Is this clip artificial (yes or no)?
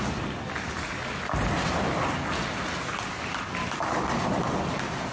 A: no